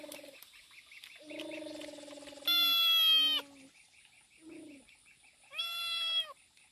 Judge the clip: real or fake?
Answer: real